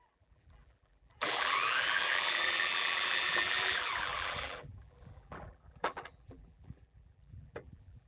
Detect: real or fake fake